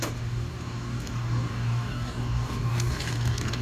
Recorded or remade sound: remade